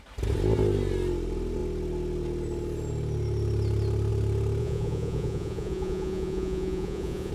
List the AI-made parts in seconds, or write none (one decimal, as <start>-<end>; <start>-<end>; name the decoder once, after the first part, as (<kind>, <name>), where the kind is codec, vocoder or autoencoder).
4.6-7.3 (vocoder, Vocos)